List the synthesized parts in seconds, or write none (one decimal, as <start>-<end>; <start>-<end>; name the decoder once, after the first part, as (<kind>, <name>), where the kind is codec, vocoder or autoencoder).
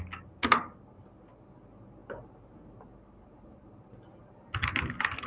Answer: none